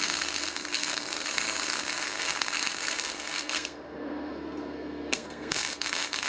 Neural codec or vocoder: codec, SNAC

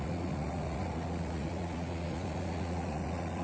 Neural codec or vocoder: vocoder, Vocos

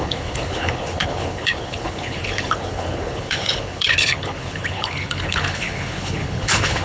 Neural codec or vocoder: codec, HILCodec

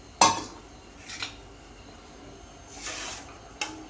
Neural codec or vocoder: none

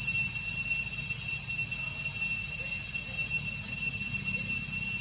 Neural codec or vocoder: none